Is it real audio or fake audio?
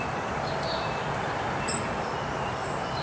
real